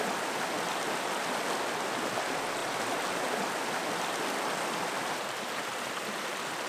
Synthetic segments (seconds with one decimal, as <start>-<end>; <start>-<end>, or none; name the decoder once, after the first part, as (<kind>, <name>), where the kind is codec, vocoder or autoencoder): none